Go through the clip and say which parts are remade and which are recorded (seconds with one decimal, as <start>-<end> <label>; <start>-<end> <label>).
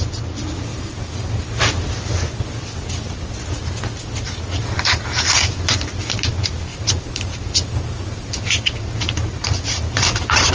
0.0-0.7 recorded; 0.7-1.4 remade; 1.4-6.7 recorded; 6.7-10.5 remade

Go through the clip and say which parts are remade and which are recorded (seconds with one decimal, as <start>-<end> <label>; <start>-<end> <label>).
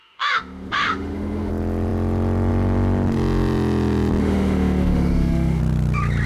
0.0-1.5 remade; 1.5-4.2 recorded; 4.2-5.6 remade; 5.6-6.3 recorded